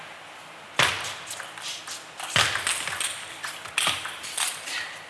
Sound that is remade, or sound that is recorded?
recorded